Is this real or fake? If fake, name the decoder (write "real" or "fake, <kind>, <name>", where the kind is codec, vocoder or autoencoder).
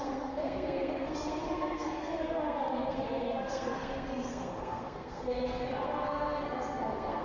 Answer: fake, codec, SNAC